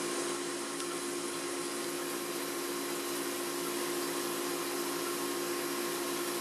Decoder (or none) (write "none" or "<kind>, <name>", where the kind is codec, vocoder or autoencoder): none